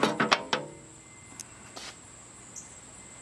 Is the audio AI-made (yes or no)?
no